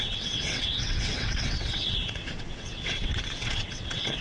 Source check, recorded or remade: remade